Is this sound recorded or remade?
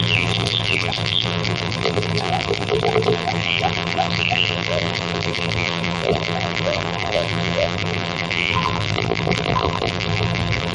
remade